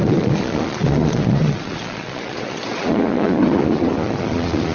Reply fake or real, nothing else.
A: fake